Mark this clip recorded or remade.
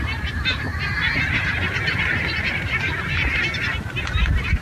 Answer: remade